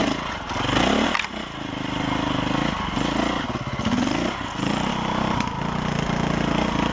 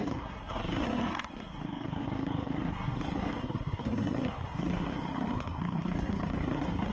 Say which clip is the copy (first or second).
second